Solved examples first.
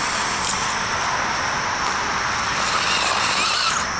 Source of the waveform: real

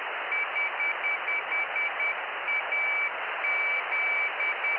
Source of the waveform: real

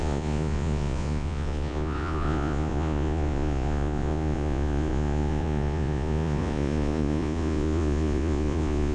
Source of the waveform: fake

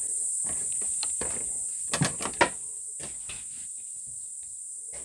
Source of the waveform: real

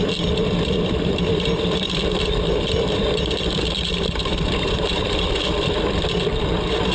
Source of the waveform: fake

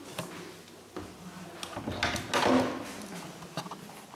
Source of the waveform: real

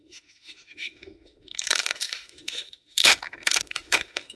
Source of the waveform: fake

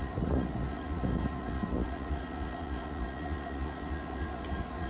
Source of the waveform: fake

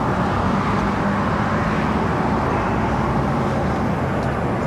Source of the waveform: real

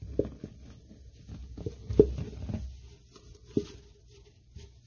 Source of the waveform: real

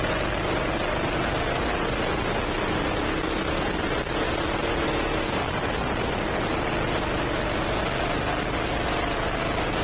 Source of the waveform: real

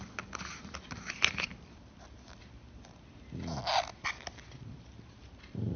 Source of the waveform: real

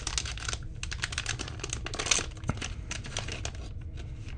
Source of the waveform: real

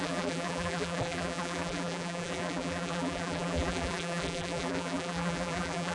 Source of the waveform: fake